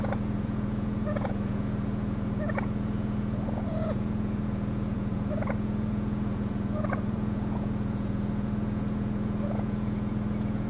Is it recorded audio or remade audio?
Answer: remade